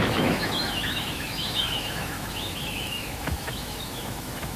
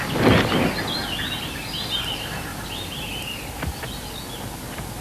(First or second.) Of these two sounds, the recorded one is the second